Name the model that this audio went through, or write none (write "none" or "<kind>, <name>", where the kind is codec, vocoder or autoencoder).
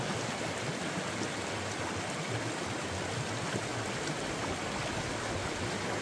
none